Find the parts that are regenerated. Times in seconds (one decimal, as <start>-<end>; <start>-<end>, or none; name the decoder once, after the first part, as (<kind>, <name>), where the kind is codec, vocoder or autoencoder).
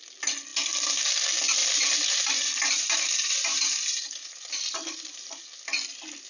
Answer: 1.6-5.4 (vocoder, BigVGAN v2)